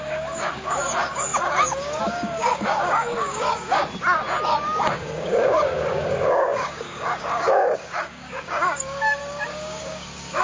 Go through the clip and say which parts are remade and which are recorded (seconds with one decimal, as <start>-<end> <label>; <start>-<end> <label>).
0.0-3.8 remade; 3.8-4.8 recorded; 4.8-10.4 remade